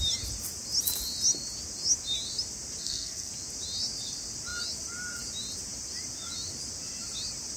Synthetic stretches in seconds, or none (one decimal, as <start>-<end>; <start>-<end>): 2.8-3.3